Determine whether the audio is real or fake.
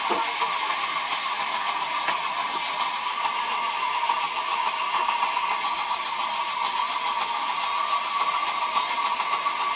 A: real